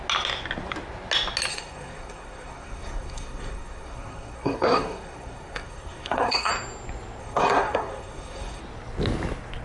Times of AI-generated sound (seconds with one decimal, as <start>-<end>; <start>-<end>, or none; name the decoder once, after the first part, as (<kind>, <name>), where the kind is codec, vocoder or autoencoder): 1.5-6.5 (codec, SNAC); 7.2-8.6